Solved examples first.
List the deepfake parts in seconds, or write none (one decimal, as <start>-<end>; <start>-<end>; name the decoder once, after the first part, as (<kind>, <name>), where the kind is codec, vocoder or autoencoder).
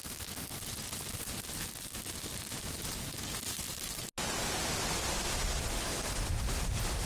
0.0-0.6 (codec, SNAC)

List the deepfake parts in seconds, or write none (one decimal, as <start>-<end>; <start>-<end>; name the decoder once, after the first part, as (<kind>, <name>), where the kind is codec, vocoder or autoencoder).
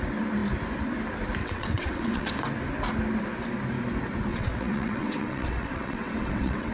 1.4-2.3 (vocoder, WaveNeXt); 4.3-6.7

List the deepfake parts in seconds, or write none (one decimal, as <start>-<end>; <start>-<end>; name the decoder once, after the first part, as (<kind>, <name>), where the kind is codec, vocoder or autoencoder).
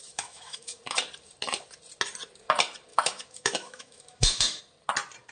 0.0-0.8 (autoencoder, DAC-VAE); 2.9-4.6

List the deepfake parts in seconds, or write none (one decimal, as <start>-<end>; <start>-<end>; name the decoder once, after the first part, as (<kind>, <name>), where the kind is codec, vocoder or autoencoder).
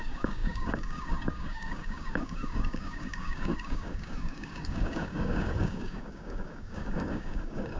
0.0-7.8 (codec, DAC)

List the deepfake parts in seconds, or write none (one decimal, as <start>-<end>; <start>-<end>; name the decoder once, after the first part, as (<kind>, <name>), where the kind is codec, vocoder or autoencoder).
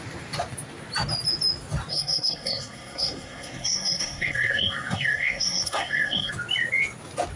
1.9-6.3 (codec, SNAC)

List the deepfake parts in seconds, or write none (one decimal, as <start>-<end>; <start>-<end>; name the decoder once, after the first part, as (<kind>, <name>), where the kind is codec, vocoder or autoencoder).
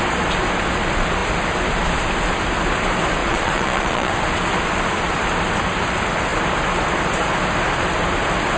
3.2-4.1 (vocoder, Vocos)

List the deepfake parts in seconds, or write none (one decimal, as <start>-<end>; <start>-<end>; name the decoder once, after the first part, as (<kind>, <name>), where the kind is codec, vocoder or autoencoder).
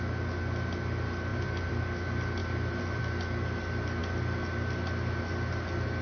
1.3-1.8 (vocoder, BigVGAN v2); 2.4-3.0